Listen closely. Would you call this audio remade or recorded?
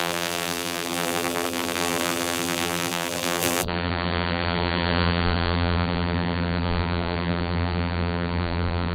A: remade